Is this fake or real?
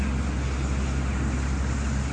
real